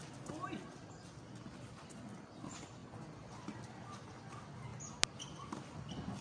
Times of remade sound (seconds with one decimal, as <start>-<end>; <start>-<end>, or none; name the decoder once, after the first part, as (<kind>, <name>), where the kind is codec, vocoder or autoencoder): none